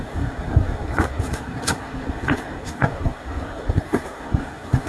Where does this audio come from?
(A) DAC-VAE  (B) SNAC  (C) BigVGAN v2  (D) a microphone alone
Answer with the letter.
B